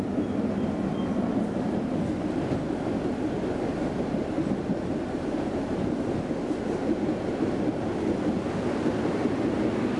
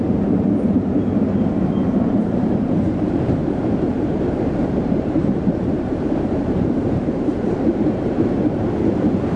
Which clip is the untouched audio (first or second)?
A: first